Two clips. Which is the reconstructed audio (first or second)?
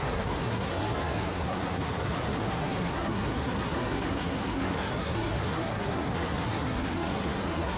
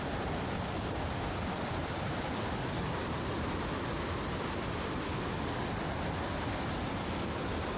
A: first